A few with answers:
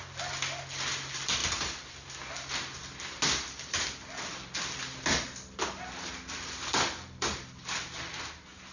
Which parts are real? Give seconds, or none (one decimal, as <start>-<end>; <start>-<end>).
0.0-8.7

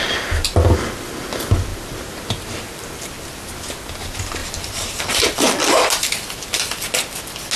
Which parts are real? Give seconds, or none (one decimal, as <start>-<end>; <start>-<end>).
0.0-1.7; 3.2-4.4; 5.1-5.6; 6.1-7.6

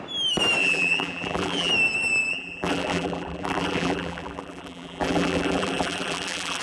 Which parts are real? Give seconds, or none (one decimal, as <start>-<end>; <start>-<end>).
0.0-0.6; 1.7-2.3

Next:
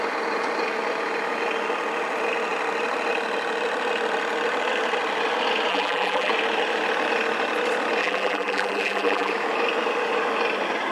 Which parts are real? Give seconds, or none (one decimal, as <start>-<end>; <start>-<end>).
0.0-5.7; 6.3-8.0; 9.3-10.9

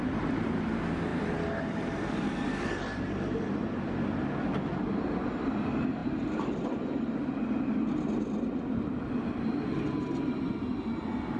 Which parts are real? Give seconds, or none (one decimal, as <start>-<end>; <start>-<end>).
0.0-1.1; 3.0-11.4